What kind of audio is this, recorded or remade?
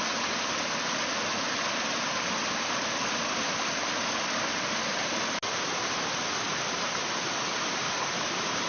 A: recorded